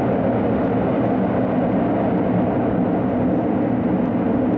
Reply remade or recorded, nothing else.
recorded